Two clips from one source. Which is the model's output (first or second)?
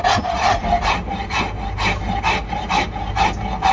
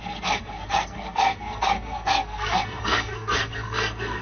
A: second